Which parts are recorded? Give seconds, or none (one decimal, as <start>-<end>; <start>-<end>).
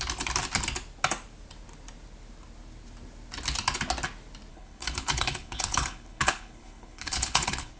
0.0-4.5